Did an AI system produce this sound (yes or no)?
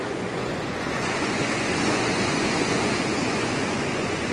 yes